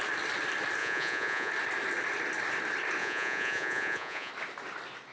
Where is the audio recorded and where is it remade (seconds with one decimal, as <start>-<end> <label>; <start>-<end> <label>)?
0.0-0.8 recorded; 0.8-1.5 remade; 1.5-3.0 recorded; 3.0-4.3 remade; 4.3-5.1 recorded